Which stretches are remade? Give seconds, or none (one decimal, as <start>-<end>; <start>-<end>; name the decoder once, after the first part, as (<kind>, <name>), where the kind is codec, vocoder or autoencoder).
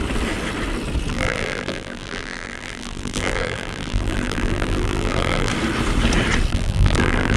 1.1-5.5 (vocoder, BigVGAN v2); 6.5-7.4